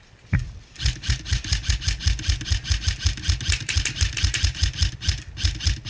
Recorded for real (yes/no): yes